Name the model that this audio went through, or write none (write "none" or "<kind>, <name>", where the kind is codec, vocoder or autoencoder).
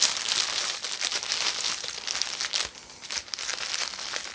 none